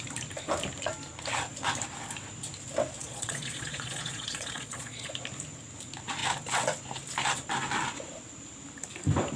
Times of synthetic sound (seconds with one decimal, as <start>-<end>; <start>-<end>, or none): 3.0-5.1